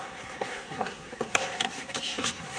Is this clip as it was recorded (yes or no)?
no